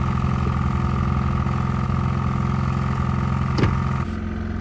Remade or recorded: recorded